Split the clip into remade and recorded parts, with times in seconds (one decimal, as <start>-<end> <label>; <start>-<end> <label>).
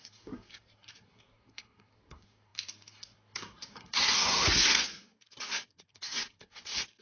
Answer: 0.0-7.0 remade